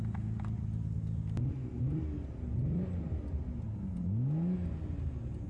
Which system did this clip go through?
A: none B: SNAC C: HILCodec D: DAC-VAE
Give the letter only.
A